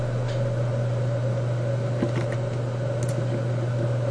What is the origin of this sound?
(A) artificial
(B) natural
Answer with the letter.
B